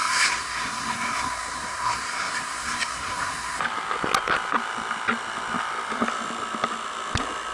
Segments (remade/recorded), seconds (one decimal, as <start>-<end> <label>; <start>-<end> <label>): 0.0-3.6 remade; 3.6-7.5 recorded

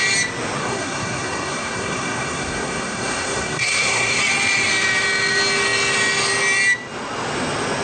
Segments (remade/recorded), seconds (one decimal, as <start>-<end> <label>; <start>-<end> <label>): 0.0-0.6 recorded; 0.6-4.2 remade; 4.2-7.8 recorded

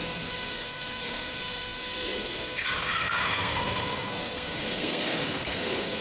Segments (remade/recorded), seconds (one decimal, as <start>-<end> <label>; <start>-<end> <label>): 0.0-6.0 remade

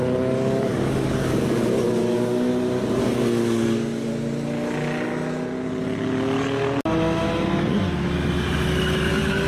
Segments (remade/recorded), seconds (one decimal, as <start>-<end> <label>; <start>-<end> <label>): 0.0-2.5 remade; 2.5-3.0 recorded; 3.0-4.1 remade; 4.1-9.1 recorded; 9.1-9.5 remade

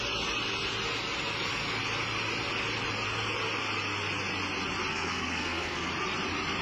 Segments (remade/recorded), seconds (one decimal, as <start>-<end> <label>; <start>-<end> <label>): 0.0-4.9 recorded; 4.9-5.9 remade; 5.9-6.6 recorded

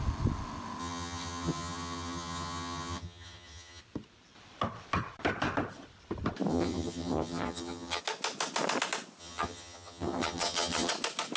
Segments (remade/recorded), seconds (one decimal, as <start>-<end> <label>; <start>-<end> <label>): 0.0-0.8 recorded; 0.8-3.8 remade; 3.8-6.5 recorded; 6.5-8.0 remade; 8.0-9.2 recorded; 9.2-10.9 remade; 10.9-11.4 recorded

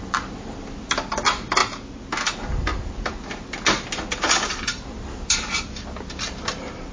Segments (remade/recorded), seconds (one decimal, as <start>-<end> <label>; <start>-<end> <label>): 0.0-6.9 recorded